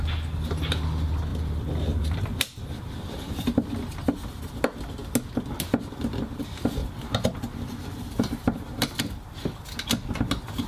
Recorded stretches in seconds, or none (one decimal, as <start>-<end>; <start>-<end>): 0.0-1.3; 3.3-6.8; 9.0-10.7